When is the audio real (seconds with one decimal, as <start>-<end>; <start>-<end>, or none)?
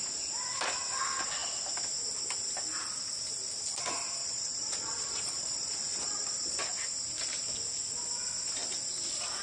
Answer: 0.0-4.2; 6.6-9.4